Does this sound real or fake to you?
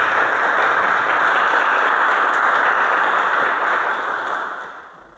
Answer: real